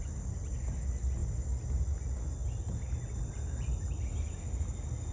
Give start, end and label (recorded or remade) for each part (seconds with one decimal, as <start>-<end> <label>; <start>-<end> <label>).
0.0-5.1 recorded